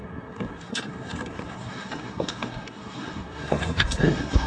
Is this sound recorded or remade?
remade